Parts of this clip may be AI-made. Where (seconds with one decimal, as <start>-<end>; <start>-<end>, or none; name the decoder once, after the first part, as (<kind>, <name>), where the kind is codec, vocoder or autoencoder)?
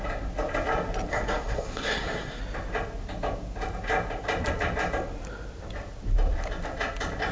1.1-2.4 (codec, SNAC)